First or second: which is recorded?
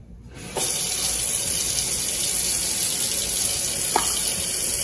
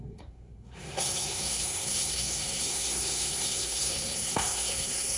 first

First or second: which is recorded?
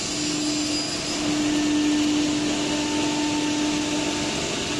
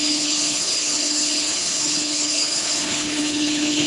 first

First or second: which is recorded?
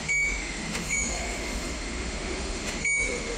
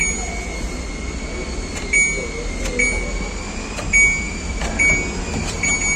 second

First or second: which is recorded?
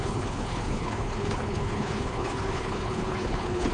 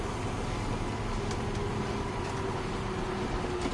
second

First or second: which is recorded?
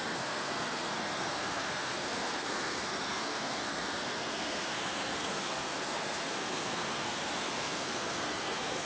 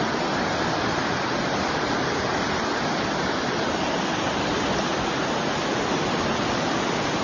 second